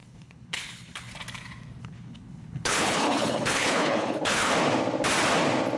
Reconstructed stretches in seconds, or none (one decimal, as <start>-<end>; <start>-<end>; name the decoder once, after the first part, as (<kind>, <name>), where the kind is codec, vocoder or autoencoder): 0.0-1.1 (codec, HILCodec); 1.8-4.5